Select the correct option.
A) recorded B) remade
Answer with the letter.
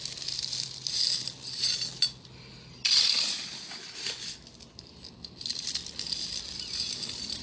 A